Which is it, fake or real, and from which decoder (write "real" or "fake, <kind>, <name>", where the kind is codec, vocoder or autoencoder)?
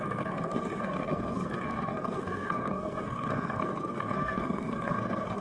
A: fake, codec, SNAC